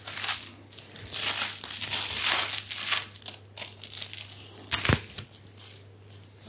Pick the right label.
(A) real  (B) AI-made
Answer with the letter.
A